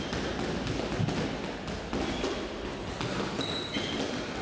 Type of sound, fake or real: real